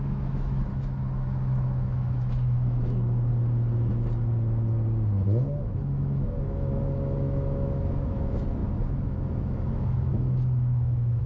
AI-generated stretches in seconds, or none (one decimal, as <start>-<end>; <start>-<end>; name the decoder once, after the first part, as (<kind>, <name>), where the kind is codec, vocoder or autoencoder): 0.0-3.3 (autoencoder, DAC-VAE); 5.6-11.3